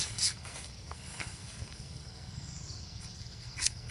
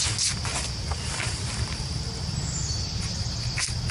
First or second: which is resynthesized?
first